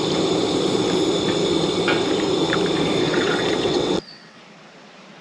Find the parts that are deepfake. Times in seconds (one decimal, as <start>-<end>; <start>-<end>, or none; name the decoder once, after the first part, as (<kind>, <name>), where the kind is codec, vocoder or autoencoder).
3.0-4.4 (vocoder, WaveNeXt)